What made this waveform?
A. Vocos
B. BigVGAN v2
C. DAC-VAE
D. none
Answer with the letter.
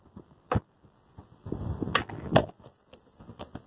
B